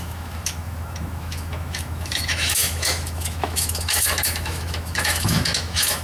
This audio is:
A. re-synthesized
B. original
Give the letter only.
A